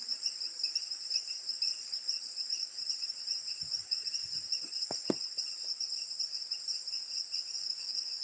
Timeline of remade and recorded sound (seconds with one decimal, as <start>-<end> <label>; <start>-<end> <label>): 0.0-7.6 recorded; 7.6-8.2 remade